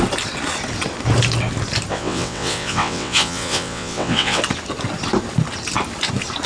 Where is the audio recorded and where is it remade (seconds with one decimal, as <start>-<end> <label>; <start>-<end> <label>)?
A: 0.0-1.9 recorded; 1.9-4.4 remade; 4.4-6.5 recorded